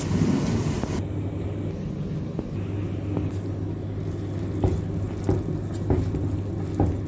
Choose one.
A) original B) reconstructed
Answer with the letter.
A